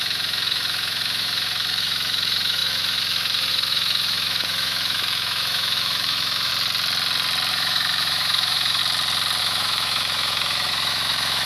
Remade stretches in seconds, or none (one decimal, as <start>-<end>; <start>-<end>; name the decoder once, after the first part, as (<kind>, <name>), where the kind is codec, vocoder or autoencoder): 0.0-6.5 (autoencoder, DAC-VAE); 7.5-8.8; 9.4-11.5